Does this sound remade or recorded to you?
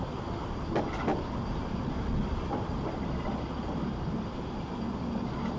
recorded